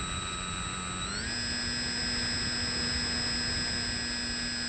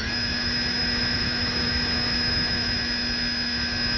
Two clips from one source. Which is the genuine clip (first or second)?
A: first